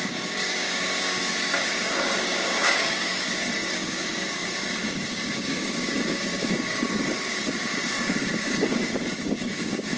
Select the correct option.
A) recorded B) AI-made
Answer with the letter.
B